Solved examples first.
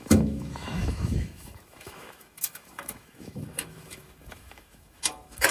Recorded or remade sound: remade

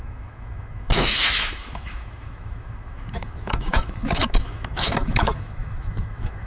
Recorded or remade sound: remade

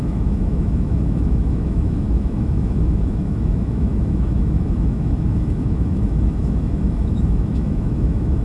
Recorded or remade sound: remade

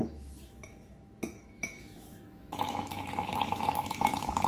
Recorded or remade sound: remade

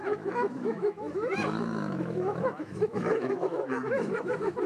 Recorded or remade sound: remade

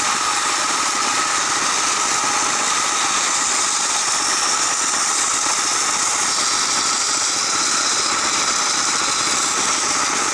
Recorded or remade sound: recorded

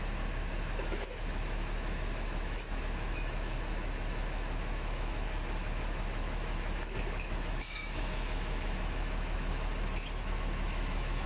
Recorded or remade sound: remade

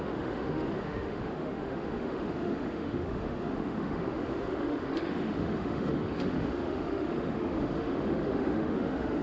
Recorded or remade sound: remade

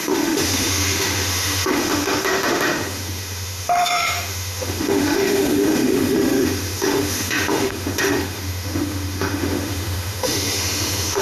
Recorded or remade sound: remade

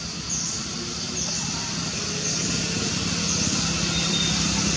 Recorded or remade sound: recorded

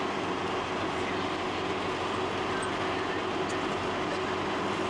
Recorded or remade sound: recorded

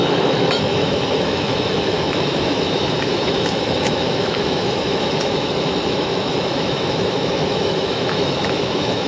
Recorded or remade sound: remade